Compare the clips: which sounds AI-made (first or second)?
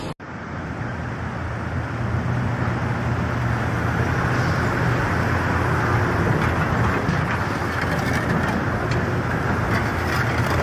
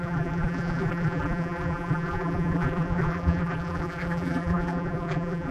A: second